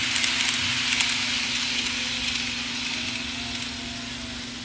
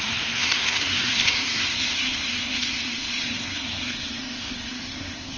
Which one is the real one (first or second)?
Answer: first